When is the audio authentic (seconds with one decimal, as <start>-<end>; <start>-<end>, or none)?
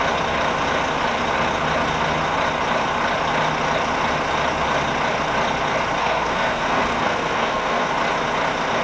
0.0-6.0; 7.9-8.8